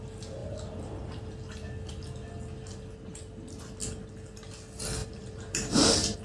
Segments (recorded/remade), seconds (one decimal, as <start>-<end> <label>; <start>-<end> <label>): 0.0-5.0 recorded; 5.0-6.2 remade